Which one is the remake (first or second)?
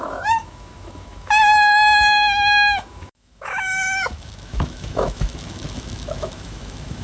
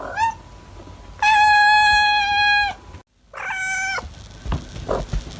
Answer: first